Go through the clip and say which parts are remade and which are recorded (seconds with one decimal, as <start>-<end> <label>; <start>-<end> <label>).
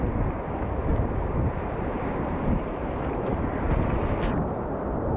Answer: 0.0-0.9 recorded; 0.9-4.0 remade; 4.0-5.2 recorded